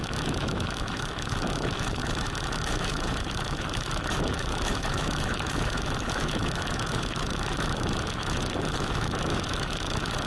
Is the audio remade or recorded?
remade